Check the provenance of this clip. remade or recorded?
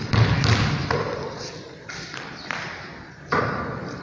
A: recorded